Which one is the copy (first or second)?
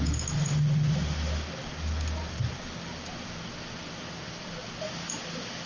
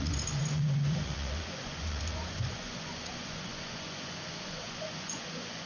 second